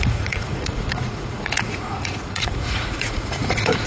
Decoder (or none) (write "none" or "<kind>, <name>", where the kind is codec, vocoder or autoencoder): vocoder, Vocos